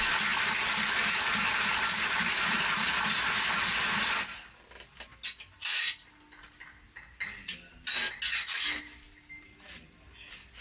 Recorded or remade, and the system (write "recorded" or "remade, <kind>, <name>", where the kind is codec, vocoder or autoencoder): recorded